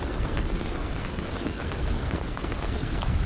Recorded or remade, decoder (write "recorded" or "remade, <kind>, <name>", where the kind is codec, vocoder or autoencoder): remade, codec, SNAC